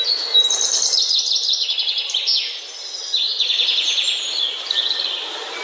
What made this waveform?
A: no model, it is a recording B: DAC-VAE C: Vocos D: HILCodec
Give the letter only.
A